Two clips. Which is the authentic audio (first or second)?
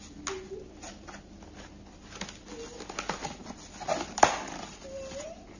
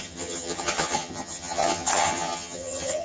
first